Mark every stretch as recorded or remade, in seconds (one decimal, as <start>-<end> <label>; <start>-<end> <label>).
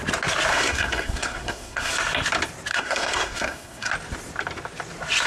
0.0-0.5 recorded; 0.5-1.9 remade; 1.9-2.7 recorded; 2.7-3.9 remade; 3.9-5.3 recorded